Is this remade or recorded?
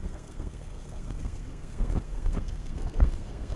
remade